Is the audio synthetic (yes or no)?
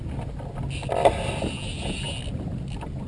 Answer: no